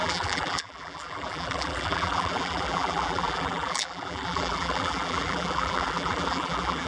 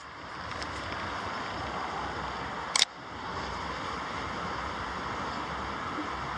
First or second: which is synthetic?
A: first